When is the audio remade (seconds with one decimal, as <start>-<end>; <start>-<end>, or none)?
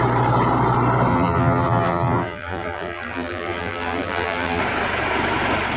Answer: 1.1-4.6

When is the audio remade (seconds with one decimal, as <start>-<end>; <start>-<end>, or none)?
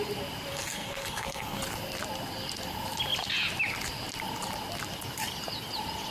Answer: 0.5-1.6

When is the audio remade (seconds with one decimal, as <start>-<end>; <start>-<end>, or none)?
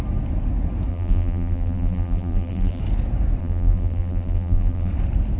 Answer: 0.9-2.8; 3.4-4.9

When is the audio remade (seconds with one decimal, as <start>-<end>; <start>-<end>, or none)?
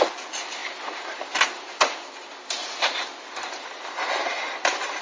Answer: none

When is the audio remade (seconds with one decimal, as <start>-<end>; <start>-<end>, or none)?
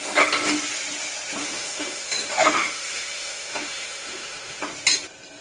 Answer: 1.4-4.6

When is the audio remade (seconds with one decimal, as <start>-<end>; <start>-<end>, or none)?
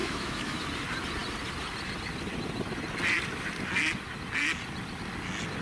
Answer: 0.0-0.6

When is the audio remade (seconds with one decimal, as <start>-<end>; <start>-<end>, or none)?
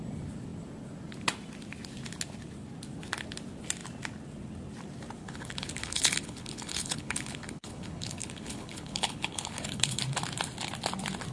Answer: 5.2-10.0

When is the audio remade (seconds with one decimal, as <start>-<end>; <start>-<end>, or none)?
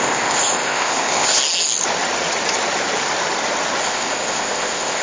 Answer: 0.0-1.4; 3.8-5.0